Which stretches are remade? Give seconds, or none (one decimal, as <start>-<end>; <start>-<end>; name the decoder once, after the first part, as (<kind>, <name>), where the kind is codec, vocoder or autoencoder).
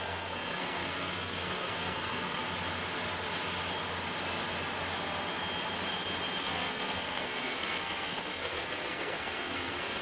0.0-2.4 (codec, SNAC); 6.4-10.0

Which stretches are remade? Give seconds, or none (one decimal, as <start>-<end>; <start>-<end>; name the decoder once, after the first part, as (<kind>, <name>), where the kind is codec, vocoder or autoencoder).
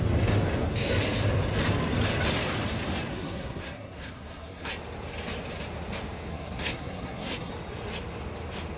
3.1-4.7 (codec, SNAC); 6.3-7.5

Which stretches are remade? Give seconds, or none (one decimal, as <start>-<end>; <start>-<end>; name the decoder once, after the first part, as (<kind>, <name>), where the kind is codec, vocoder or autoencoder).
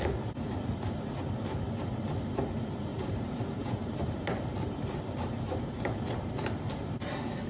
2.9-7.1 (vocoder, BigVGAN v2)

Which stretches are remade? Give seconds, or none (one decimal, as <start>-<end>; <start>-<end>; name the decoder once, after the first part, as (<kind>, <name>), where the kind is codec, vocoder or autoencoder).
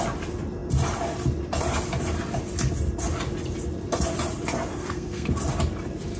4.7-5.4 (codec, SNAC)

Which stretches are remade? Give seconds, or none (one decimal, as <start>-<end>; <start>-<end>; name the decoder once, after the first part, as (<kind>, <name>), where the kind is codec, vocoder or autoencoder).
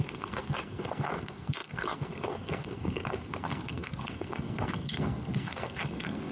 0.0-6.3 (codec, SNAC)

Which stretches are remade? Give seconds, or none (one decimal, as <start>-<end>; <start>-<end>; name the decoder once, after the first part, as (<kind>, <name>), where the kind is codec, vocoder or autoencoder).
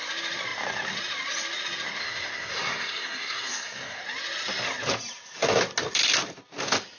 2.0-4.0 (codec, SNAC)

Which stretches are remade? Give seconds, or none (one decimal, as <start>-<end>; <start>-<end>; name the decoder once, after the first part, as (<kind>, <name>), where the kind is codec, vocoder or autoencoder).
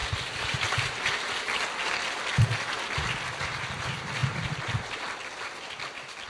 4.2-5.2 (vocoder, BigVGAN v2)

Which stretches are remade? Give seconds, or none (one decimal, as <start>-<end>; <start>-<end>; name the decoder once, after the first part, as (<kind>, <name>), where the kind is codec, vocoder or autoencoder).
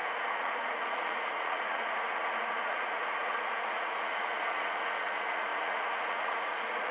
0.0-6.9 (vocoder, Vocos)